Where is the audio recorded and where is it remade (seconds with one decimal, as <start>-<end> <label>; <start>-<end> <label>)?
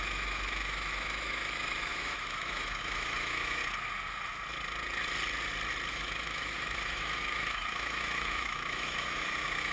0.0-3.6 remade; 3.6-5.9 recorded; 5.9-9.7 remade